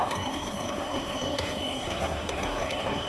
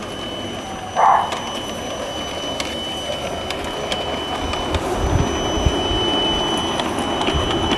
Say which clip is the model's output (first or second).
first